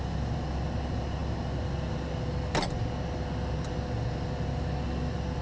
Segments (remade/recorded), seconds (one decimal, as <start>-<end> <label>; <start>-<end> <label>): 0.0-5.4 recorded

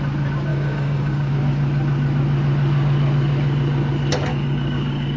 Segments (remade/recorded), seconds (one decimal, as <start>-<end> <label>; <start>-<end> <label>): 0.0-0.5 recorded; 0.5-1.3 remade; 1.3-4.3 recorded; 4.3-5.2 remade

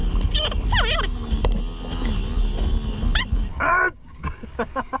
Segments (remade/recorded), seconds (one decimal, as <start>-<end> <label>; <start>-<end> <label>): 0.0-3.5 recorded; 3.5-5.0 remade